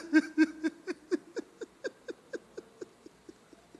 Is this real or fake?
real